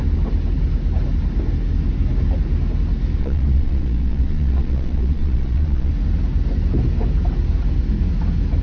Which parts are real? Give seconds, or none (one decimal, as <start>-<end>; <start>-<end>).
0.0-3.2; 5.9-8.6